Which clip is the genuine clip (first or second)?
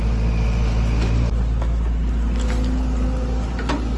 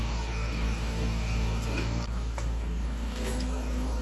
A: first